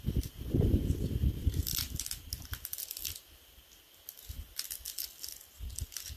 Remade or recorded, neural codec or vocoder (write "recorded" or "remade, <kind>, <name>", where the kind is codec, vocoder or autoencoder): recorded